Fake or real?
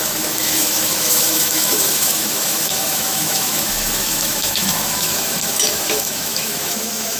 fake